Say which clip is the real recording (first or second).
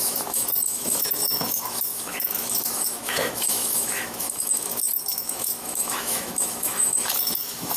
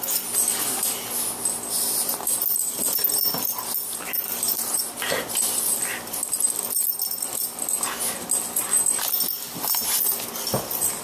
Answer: second